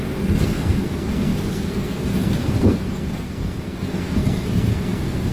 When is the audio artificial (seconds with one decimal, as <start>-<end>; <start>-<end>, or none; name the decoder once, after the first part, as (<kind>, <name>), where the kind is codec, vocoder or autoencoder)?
0.0-5.3 (codec, SNAC)